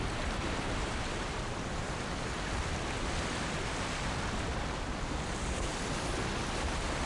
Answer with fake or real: real